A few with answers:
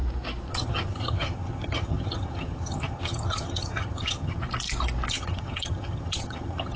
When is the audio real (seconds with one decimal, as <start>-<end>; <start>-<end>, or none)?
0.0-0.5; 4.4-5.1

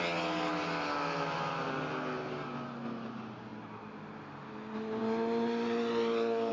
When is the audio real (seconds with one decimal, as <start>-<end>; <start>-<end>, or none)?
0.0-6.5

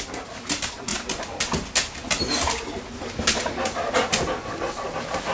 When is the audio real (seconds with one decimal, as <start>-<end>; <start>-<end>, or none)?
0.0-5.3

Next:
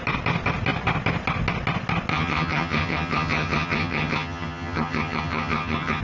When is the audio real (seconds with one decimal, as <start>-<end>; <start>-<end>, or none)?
0.0-2.1

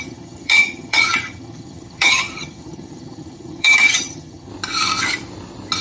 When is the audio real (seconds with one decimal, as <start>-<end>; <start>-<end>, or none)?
4.5-5.8

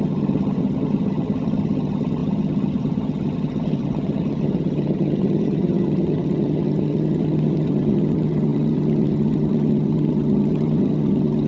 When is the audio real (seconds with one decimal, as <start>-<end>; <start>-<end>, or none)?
none

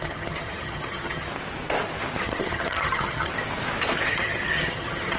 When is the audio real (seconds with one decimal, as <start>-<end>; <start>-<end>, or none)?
1.3-2.2; 3.3-4.1

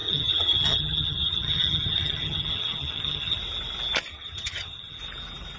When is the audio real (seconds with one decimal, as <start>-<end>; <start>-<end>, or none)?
3.4-4.1; 5.0-5.6